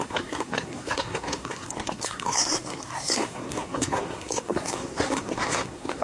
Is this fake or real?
fake